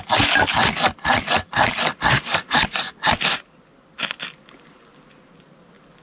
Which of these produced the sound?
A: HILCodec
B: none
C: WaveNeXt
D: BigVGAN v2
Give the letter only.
B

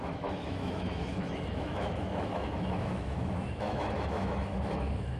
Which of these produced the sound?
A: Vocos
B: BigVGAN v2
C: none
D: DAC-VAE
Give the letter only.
D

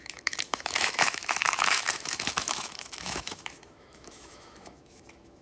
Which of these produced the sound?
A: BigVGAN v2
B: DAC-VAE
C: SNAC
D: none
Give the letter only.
B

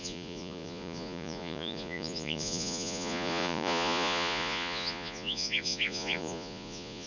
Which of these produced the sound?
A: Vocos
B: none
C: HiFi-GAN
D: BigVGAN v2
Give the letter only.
A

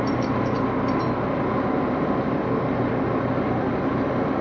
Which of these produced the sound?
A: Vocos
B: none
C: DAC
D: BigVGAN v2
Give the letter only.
B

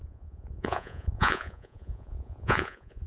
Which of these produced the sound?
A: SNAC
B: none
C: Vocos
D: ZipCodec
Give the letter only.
C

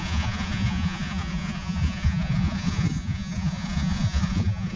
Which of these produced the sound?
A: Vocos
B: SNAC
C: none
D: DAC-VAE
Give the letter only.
A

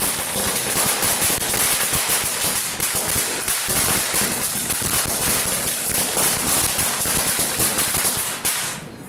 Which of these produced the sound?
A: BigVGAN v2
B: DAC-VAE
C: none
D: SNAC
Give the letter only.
C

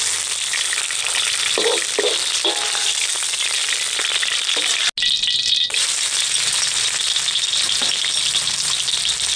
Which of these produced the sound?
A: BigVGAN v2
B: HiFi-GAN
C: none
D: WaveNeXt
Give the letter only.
C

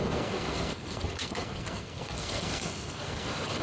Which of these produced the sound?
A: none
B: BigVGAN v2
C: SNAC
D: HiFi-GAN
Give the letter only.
C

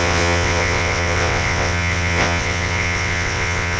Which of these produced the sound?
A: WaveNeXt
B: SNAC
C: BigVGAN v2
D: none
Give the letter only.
A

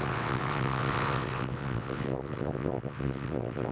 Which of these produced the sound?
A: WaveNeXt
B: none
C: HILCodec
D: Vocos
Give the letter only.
A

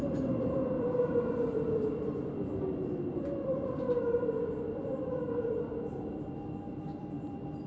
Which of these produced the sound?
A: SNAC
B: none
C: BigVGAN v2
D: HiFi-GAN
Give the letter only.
C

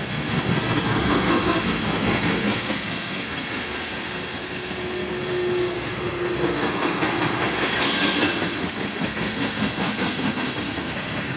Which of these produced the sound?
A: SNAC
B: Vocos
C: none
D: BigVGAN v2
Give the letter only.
A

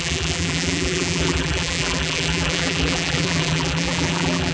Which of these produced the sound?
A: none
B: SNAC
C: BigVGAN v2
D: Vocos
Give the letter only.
C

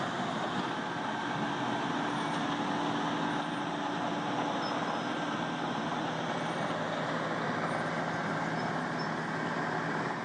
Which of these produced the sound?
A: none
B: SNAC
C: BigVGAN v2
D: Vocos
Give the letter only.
A